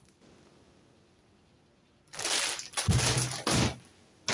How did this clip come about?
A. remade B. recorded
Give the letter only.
B